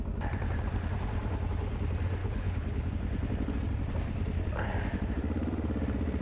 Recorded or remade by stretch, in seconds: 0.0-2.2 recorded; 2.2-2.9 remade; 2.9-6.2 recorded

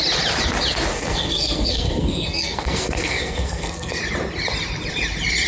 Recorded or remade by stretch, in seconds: 0.0-0.9 recorded; 0.9-4.0 remade; 4.0-5.5 recorded

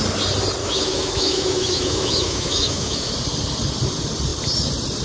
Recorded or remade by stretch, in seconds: 0.0-0.6 recorded; 0.6-3.1 remade; 3.1-5.0 recorded

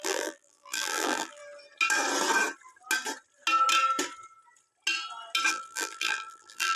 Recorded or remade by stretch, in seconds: 0.0-1.4 remade; 1.4-5.5 recorded; 5.5-6.8 remade

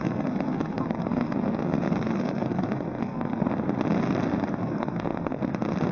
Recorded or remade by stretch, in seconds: 0.0-3.5 remade; 3.5-4.6 recorded; 4.6-5.4 remade; 5.4-5.9 recorded

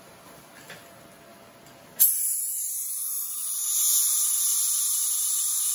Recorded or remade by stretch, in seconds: 0.0-5.7 recorded